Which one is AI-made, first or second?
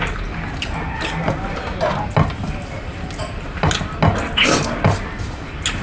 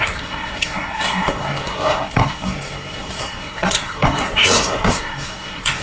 second